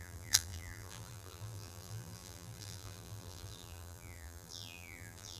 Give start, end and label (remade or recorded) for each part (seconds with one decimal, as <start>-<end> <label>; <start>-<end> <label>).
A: 0.0-5.4 remade